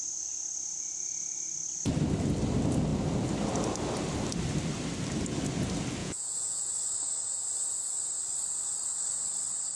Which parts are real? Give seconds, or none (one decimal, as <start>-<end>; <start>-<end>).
0.0-6.0; 6.6-9.8